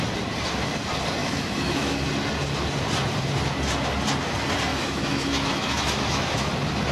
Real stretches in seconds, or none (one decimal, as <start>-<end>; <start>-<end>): 0.0-1.2; 2.1-4.7; 6.5-6.9